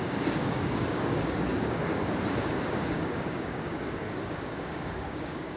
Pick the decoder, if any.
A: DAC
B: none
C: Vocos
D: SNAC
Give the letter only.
A